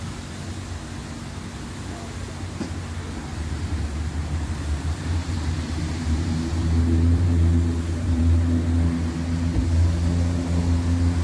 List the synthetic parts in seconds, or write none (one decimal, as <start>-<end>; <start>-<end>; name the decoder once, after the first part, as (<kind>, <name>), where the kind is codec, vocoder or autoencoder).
3.3-8.2 (vocoder, BigVGAN v2)